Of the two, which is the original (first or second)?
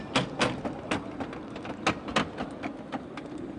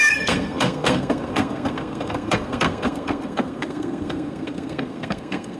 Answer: first